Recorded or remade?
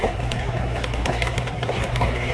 remade